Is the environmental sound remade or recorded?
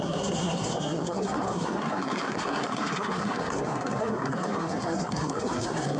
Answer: remade